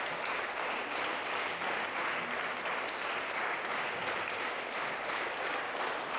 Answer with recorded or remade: recorded